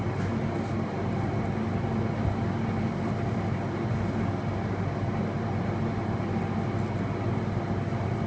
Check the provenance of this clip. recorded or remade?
recorded